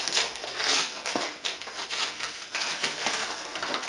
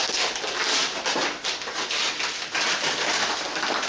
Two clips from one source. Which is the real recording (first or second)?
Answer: second